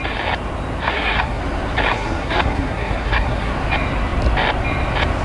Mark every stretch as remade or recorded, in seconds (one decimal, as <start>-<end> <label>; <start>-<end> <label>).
0.0-0.8 recorded; 0.8-1.4 remade; 1.4-1.9 recorded; 1.9-3.5 remade; 3.5-5.2 recorded